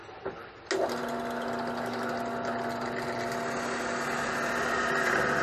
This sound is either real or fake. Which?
real